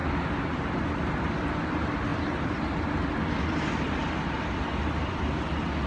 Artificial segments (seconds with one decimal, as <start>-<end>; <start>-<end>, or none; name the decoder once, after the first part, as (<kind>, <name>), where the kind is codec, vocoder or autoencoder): 0.0-5.9 (vocoder, BigVGAN v2)